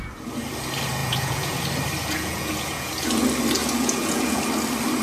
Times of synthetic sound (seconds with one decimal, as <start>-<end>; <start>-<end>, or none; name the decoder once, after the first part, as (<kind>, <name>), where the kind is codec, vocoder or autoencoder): 1.0-1.6 (vocoder, Vocos); 2.0-2.9; 3.6-4.4